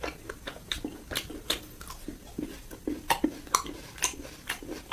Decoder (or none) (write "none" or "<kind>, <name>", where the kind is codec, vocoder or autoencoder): none